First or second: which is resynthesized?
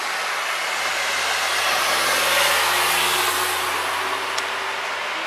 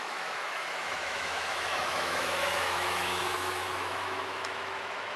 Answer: second